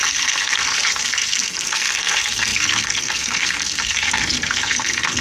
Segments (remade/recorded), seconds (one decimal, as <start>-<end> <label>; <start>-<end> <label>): 0.0-5.2 remade